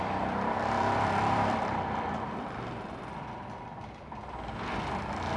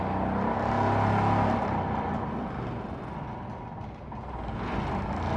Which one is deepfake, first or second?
first